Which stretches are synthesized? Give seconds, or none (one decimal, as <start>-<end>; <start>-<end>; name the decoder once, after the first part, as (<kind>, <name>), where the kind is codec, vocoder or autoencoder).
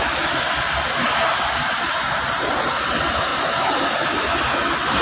none